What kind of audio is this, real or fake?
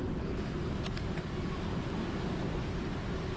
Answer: real